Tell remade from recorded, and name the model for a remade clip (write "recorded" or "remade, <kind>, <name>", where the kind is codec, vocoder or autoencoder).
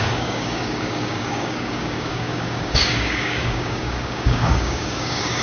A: remade, codec, DAC